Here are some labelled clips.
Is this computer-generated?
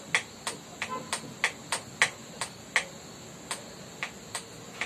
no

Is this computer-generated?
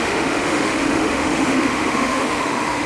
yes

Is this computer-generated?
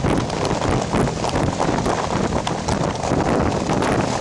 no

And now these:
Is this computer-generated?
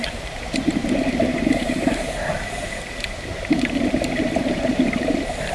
yes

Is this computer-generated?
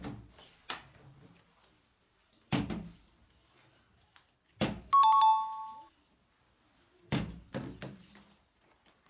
no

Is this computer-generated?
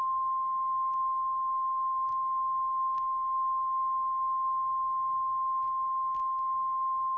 yes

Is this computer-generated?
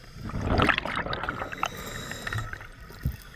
no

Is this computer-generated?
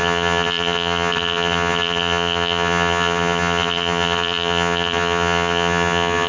yes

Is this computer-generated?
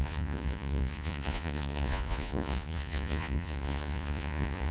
yes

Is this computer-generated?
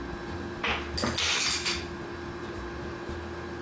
no